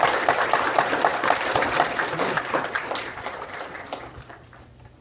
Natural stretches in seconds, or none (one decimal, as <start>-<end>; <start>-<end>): 0.0-1.1; 4.1-5.0